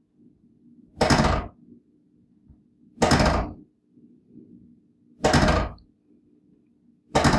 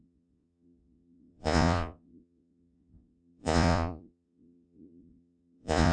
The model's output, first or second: second